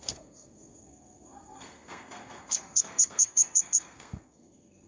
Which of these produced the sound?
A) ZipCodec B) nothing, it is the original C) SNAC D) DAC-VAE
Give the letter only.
C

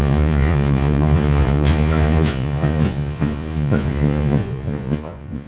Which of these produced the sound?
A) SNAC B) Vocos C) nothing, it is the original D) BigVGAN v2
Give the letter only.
B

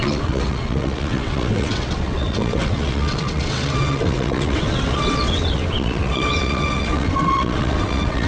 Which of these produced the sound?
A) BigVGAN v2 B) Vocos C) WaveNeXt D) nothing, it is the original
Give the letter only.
C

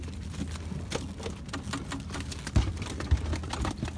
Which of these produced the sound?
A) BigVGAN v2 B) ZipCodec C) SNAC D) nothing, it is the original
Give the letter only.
D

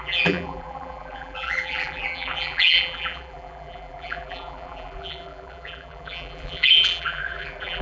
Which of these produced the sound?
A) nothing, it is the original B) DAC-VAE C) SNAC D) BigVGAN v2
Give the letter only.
D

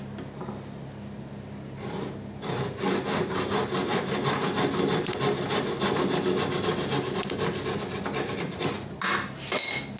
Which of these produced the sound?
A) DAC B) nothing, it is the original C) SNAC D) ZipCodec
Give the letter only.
B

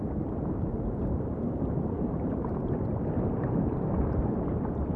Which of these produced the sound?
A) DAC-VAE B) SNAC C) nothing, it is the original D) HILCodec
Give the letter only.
C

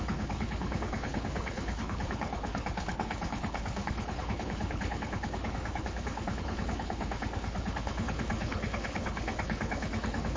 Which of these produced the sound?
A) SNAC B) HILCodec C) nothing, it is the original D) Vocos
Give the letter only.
B